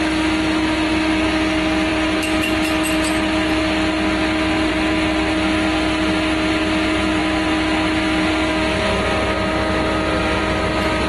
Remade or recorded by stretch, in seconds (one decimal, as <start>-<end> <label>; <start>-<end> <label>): 0.0-11.1 recorded